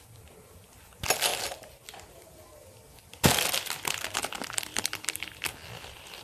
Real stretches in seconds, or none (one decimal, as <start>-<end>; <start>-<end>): 0.0-6.2